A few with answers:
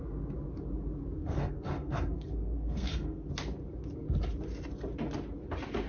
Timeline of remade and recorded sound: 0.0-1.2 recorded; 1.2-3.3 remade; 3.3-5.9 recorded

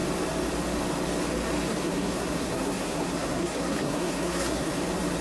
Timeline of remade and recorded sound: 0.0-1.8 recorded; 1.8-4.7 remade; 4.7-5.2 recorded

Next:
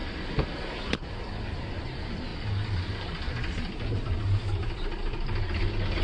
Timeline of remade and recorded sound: 0.0-6.0 recorded